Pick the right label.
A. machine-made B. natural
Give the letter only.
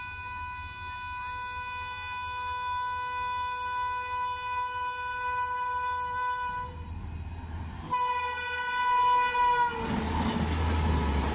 B